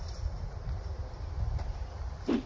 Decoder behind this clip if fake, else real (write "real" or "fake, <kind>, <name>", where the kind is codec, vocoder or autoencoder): real